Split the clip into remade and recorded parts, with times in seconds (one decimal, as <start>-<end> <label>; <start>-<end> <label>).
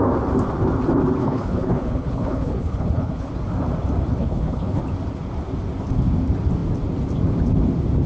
0.0-1.2 recorded; 1.2-3.3 remade; 3.3-4.2 recorded; 4.2-4.8 remade; 4.8-8.1 recorded